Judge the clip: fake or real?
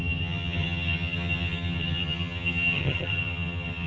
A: fake